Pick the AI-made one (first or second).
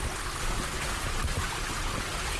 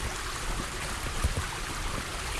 second